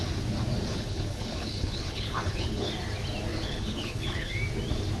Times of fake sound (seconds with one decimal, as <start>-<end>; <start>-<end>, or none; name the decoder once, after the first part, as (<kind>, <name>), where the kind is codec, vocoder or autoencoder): 0.7-2.7 (codec, HILCodec); 3.3-4.3